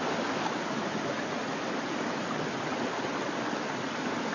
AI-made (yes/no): no